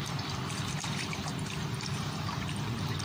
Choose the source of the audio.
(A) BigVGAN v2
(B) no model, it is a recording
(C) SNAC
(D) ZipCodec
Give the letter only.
A